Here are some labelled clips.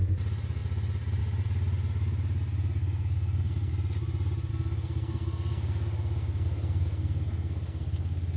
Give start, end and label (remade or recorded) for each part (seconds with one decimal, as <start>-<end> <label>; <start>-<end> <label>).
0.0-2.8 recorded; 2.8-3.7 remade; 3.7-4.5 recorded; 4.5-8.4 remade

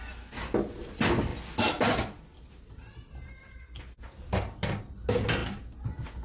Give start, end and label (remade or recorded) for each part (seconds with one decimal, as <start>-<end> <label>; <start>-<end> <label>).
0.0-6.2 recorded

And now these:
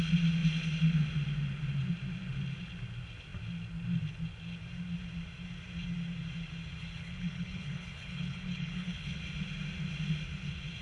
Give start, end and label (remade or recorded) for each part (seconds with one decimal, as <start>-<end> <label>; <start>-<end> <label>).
0.0-6.8 recorded; 6.8-9.2 remade; 9.2-10.8 recorded

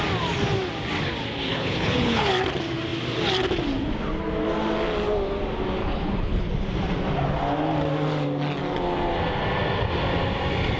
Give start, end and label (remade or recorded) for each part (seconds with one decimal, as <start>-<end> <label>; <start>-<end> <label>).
0.0-1.5 recorded; 1.5-2.3 remade; 2.3-5.8 recorded; 5.8-6.5 remade; 6.5-10.8 recorded

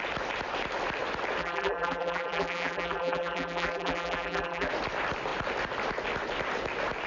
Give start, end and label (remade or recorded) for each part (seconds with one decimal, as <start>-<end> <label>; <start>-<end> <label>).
0.0-1.4 recorded; 1.4-4.7 remade; 4.7-7.1 recorded